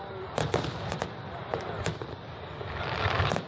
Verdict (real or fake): real